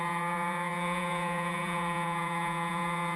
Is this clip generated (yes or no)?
yes